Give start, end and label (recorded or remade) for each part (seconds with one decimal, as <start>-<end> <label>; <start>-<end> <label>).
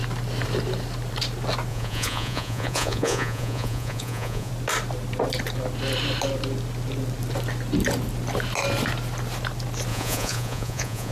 0.0-1.7 recorded; 1.7-4.5 remade; 4.5-9.9 recorded; 9.9-11.1 remade